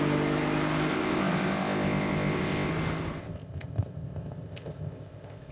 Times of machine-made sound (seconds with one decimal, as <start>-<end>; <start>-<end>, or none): 0.9-2.7; 3.2-5.5